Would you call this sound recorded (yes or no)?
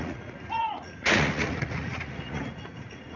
no